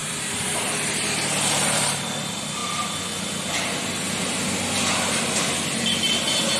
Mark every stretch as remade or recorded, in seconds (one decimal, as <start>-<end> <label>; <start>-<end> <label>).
0.0-2.0 remade; 2.0-6.6 recorded